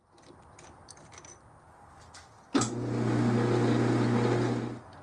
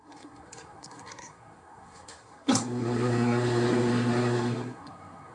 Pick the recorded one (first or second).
first